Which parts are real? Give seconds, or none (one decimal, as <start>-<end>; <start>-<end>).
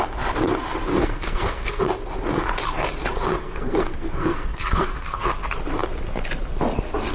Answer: 0.0-0.9; 1.8-3.4; 5.2-7.1